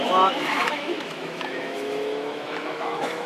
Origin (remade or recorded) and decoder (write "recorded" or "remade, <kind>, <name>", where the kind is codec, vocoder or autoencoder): remade, autoencoder, DAC-VAE